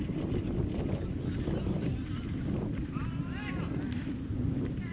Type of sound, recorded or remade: remade